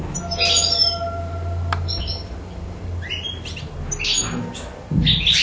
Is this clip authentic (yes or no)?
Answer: yes